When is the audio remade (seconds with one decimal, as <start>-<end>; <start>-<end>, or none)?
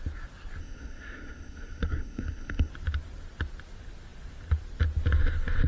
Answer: 0.6-2.7